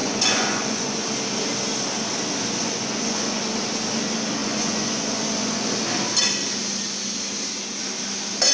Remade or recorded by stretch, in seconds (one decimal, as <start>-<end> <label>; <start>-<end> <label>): 0.0-1.0 remade; 1.0-2.6 recorded; 2.6-3.4 remade; 3.4-4.4 recorded; 4.4-5.7 remade; 5.7-8.5 recorded